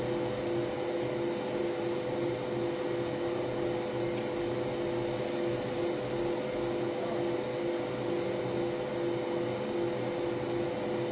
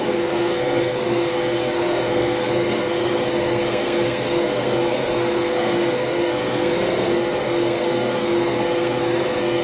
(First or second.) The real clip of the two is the first